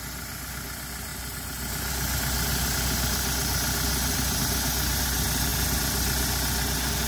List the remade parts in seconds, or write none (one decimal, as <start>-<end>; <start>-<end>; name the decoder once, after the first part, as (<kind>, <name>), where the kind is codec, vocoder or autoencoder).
none